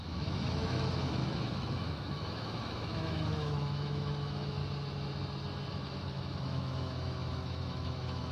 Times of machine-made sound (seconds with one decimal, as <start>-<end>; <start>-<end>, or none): 0.0-4.6; 5.7-8.3